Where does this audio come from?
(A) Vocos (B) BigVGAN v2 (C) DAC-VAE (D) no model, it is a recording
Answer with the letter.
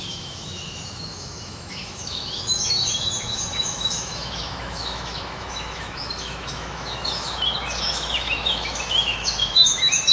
C